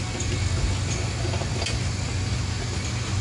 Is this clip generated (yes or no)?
no